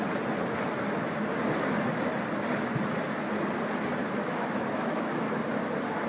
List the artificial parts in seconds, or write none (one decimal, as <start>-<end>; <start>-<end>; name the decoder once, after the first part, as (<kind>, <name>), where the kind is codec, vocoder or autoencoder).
4.0-5.2 (autoencoder, DAC-VAE)